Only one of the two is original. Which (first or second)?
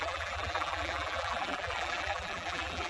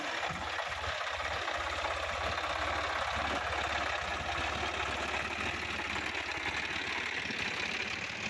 second